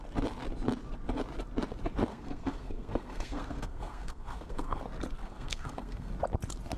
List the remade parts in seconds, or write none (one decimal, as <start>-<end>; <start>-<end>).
2.1-4.8; 5.2-6.1